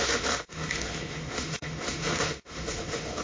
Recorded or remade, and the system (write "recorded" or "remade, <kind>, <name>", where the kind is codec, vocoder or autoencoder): remade, autoencoder, DAC-VAE